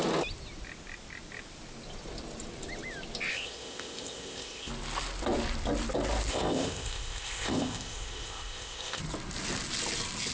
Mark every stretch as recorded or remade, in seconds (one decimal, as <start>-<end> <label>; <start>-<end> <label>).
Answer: 0.0-3.3 recorded; 3.3-4.7 remade; 4.7-6.3 recorded; 6.3-9.0 remade; 9.0-10.3 recorded